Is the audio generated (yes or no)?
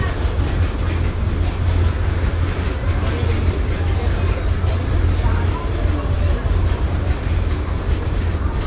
no